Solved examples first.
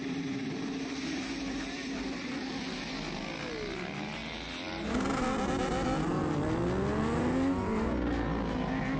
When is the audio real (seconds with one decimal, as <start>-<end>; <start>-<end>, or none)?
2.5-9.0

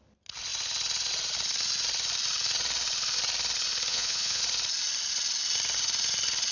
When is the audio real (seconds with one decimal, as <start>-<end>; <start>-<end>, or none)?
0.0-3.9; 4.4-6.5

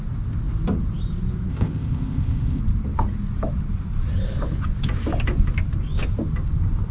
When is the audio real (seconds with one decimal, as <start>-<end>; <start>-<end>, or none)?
0.0-1.5; 2.6-6.9

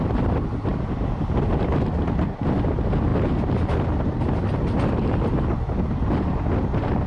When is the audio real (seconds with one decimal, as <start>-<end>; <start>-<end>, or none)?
0.0-7.1